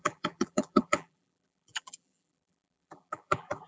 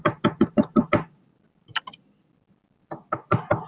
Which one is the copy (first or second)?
first